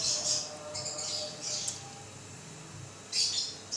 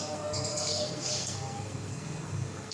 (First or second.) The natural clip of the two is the first